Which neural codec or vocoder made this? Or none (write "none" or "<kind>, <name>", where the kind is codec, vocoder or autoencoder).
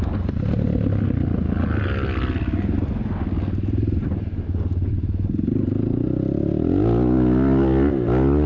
none